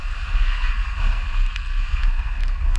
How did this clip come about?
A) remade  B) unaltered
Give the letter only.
A